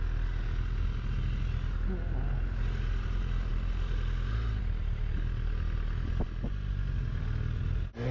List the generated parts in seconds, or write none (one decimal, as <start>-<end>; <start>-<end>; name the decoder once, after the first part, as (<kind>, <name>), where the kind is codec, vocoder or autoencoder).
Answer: none